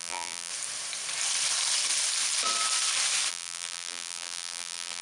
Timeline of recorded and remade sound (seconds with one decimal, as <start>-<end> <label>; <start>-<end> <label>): 0.0-0.5 remade; 0.5-3.3 recorded; 3.3-5.0 remade